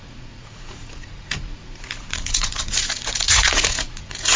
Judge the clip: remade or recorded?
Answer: remade